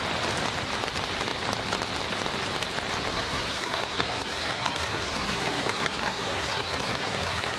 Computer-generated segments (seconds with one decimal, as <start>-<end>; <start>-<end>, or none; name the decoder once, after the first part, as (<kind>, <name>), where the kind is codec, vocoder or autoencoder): 3.1-7.6 (codec, SNAC)